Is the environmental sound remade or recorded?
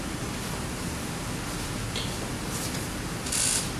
recorded